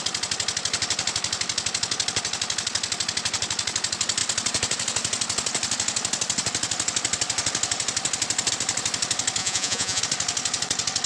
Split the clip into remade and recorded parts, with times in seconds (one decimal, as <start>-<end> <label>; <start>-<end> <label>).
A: 0.0-9.4 recorded; 9.4-10.0 remade; 10.0-11.1 recorded